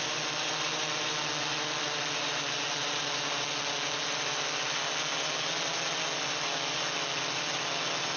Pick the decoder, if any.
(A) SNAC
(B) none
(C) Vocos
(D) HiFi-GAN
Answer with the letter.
B